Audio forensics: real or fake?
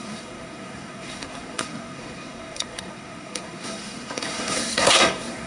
fake